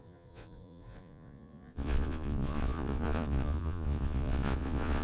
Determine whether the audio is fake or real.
fake